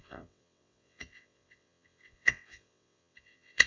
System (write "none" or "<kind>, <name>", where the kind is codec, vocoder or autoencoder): vocoder, WaveNeXt